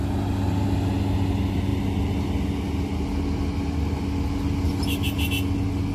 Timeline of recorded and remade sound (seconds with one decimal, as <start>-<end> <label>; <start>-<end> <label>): 0.0-5.9 recorded